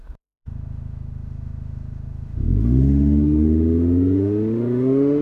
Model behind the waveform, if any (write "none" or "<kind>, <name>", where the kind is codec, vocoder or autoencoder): autoencoder, DAC-VAE